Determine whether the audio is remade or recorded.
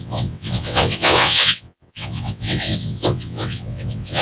remade